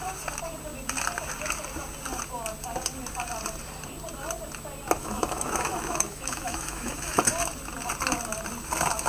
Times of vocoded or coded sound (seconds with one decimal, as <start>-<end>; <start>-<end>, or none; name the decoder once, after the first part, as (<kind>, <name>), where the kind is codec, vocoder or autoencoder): 5.0-7.2 (autoencoder, DAC-VAE)